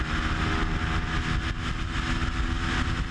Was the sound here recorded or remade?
recorded